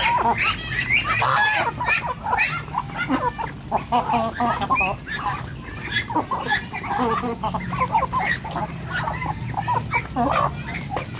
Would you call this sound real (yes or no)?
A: yes